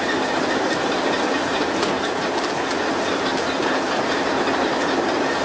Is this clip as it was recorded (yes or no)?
yes